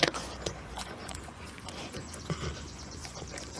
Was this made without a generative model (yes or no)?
no